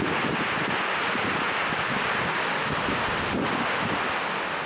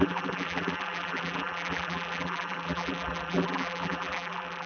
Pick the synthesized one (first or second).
second